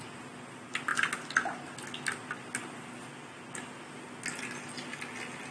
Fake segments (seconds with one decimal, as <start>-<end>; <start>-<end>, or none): none